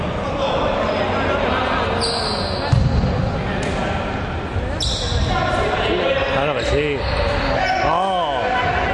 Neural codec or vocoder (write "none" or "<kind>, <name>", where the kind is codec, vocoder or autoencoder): none